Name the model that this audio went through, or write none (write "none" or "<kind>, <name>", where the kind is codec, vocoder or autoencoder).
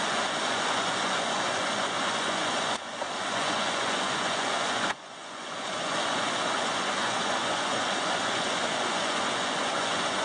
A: vocoder, Vocos